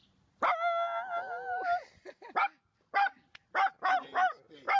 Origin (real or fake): real